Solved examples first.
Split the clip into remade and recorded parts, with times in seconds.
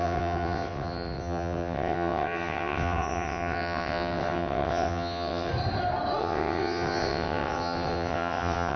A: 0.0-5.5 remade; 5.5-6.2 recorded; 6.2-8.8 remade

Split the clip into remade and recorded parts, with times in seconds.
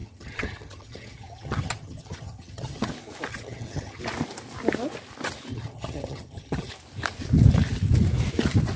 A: 0.0-2.9 remade; 2.9-3.3 recorded; 3.3-4.0 remade; 4.0-5.5 recorded; 5.5-6.7 remade; 6.7-8.8 recorded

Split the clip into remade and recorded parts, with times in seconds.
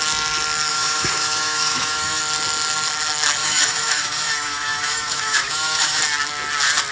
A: 0.0-0.7 recorded; 0.7-2.2 remade; 2.2-3.4 recorded; 3.4-6.0 remade; 6.0-6.9 recorded